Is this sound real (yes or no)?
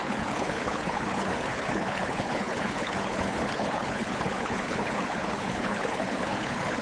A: no